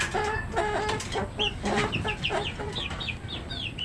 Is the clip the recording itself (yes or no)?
yes